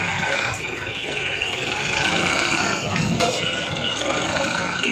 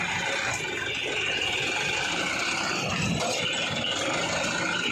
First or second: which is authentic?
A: second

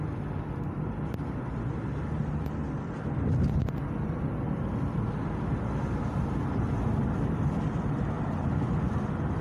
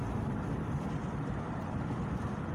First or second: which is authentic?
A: first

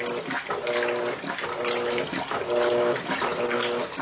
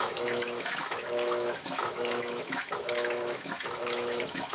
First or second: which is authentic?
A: first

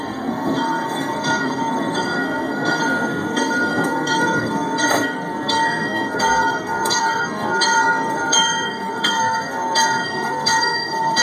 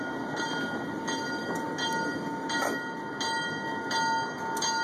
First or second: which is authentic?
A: second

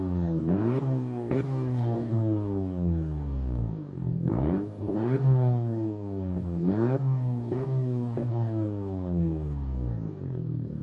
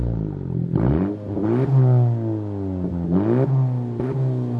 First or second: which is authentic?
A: second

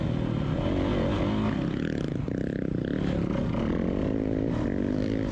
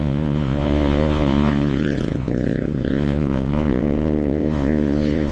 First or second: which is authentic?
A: first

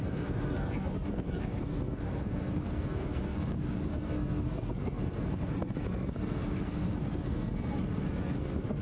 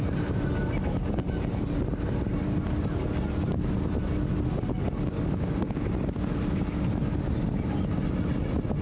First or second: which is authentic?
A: second